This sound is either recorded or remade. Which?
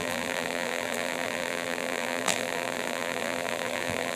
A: remade